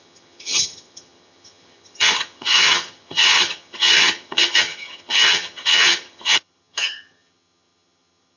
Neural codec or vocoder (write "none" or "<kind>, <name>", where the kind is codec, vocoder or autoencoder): vocoder, HiFi-GAN